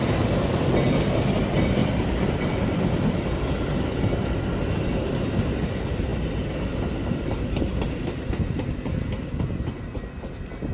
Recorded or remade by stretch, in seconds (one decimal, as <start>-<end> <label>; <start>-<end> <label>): 0.0-10.7 recorded